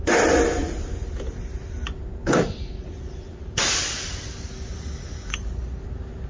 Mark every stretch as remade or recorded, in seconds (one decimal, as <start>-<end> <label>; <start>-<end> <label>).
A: 0.0-6.3 recorded